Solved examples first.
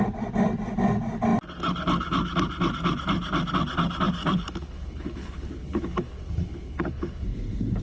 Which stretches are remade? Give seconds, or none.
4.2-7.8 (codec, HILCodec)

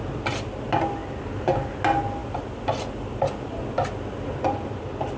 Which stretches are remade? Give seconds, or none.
none

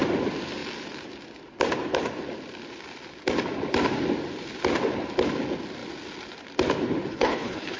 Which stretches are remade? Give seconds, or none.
7.1-7.8 (codec, HILCodec)

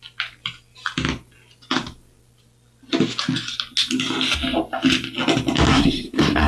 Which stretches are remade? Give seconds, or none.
5.7-6.5 (codec, SNAC)

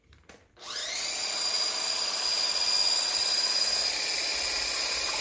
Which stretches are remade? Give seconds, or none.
none

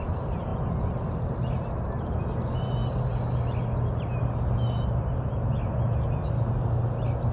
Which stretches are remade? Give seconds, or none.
none